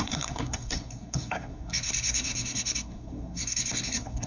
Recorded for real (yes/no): no